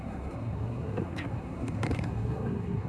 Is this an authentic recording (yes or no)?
no